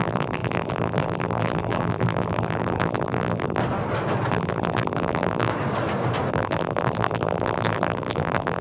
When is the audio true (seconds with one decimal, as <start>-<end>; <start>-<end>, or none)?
3.6-4.3; 5.5-6.3